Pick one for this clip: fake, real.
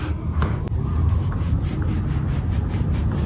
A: real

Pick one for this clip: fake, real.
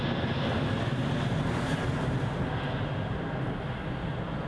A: real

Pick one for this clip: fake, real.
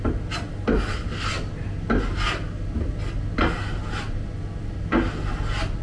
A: real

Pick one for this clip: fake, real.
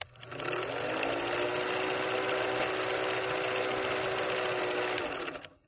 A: real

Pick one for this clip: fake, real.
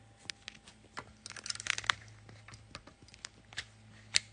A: real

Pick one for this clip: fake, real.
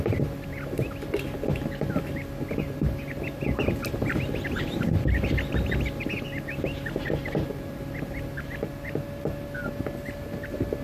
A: real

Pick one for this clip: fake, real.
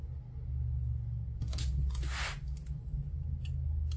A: real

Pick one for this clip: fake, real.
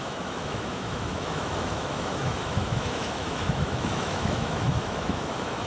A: fake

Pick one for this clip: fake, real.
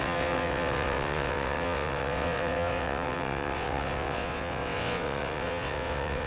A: fake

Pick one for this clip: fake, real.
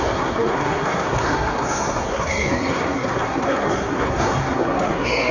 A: fake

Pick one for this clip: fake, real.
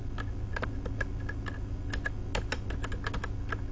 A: real